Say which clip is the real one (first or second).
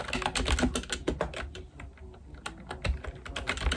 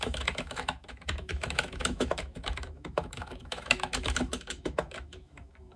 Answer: first